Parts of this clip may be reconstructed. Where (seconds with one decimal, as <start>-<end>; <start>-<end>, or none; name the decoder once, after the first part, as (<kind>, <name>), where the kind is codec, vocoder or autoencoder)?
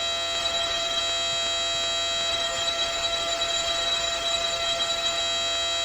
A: 0.4-1.0 (codec, DAC); 2.3-5.2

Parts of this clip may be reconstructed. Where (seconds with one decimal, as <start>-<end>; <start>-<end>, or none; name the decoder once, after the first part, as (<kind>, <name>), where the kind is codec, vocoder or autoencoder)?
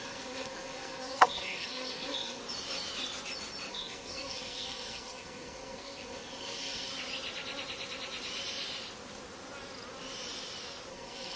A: 0.0-2.4 (codec, SNAC); 3.7-6.9; 10.9-11.4